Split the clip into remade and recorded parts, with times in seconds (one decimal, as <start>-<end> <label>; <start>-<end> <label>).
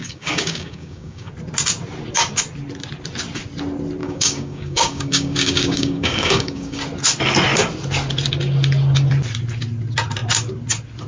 0.0-1.3 remade; 1.3-4.0 recorded; 4.0-6.8 remade; 6.8-11.1 recorded